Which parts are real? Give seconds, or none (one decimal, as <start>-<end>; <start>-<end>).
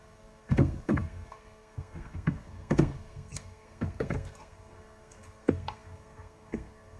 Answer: none